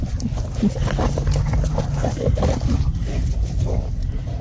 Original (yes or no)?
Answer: yes